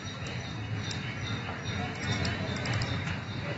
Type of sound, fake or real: real